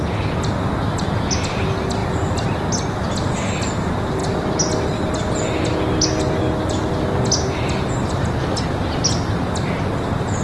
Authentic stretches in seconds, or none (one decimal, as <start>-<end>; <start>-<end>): 0.0-10.4